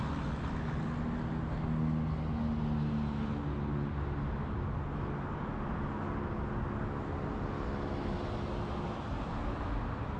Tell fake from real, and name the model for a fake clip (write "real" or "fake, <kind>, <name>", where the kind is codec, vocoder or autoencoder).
real